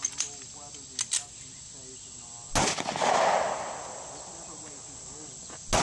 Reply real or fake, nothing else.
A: real